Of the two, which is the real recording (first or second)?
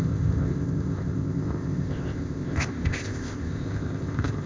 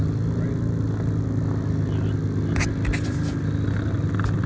second